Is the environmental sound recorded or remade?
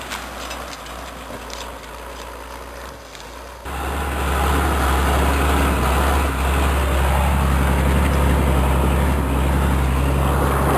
recorded